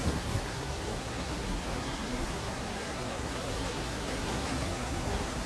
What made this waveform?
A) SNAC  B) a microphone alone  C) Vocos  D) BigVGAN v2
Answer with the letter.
A